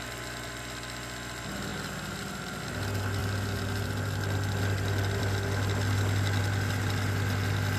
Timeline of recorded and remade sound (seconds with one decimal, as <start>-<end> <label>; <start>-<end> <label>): 0.0-7.8 recorded